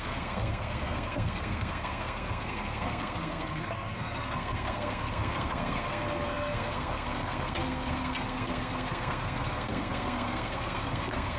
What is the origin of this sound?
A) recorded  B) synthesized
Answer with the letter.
B